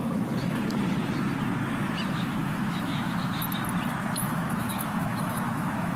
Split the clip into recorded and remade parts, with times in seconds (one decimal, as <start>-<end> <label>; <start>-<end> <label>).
0.0-0.6 remade; 0.6-2.1 recorded; 2.1-3.3 remade; 3.3-4.2 recorded; 4.2-6.0 remade